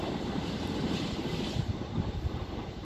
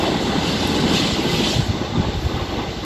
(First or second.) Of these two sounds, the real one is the second